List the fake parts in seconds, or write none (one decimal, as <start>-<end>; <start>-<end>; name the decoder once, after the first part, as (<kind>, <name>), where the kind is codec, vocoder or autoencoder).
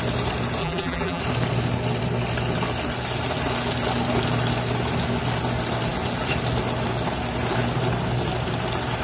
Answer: 0.6-1.2 (vocoder, BigVGAN v2)